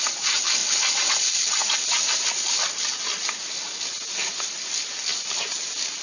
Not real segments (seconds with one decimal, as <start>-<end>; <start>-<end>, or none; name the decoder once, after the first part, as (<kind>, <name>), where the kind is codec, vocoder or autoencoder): none